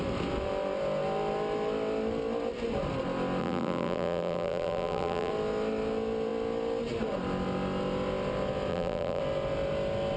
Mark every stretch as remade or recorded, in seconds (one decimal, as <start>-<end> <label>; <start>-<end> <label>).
0.0-3.4 recorded; 3.4-5.3 remade; 5.3-8.7 recorded; 8.7-9.2 remade; 9.2-10.2 recorded